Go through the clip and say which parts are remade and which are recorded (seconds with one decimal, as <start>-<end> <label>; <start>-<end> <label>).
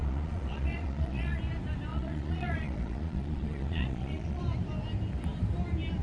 0.0-1.4 remade; 1.4-1.9 recorded; 1.9-4.4 remade; 4.4-6.0 recorded